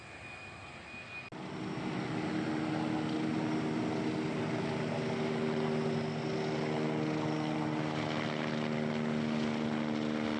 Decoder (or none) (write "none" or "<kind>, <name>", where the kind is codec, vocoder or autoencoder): none